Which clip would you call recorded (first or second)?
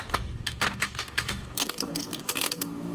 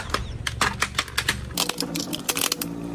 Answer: second